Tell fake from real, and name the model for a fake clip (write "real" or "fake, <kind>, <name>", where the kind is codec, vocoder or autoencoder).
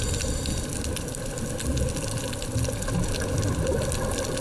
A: real